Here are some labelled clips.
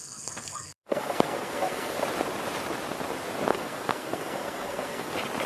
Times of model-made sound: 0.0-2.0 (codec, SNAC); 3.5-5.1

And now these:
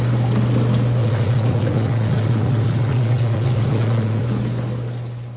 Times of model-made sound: 1.0-4.2 (vocoder, Vocos)